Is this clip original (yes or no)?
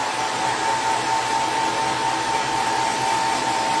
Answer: yes